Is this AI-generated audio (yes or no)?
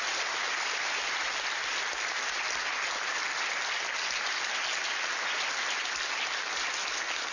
no